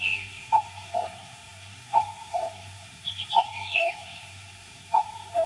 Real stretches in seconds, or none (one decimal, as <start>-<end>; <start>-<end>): none